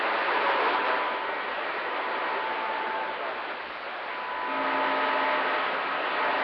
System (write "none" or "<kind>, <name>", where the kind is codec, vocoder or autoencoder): none